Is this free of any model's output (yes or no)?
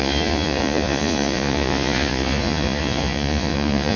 no